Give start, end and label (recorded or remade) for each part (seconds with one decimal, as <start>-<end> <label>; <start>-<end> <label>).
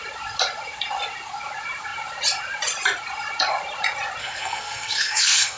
0.0-4.2 recorded; 4.2-5.6 remade